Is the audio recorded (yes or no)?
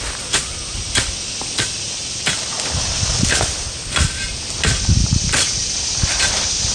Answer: yes